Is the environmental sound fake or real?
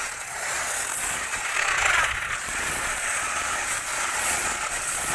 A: fake